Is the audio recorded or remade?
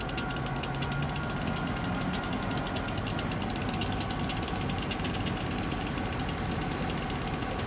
recorded